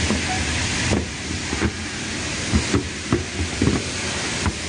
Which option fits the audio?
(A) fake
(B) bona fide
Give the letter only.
B